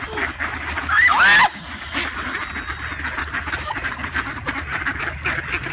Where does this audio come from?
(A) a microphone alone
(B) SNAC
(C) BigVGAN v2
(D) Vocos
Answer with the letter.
A